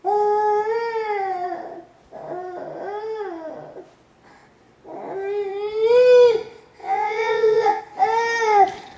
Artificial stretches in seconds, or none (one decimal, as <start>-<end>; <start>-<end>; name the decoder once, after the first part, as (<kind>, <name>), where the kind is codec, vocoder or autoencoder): 6.8-7.8 (vocoder, Vocos)